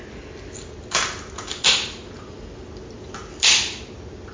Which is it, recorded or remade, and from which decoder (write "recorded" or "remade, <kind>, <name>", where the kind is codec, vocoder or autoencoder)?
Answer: recorded